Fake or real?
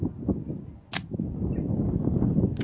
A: real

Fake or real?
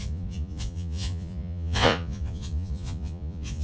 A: fake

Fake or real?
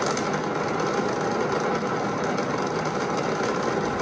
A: real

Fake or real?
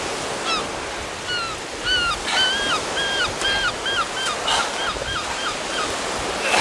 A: real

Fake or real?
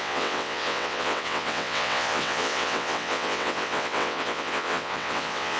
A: fake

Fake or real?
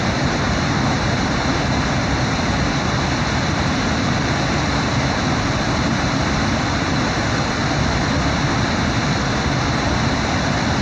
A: real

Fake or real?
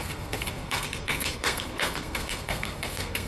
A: fake